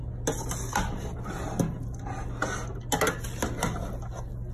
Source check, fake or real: real